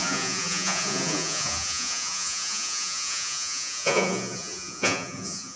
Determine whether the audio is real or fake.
fake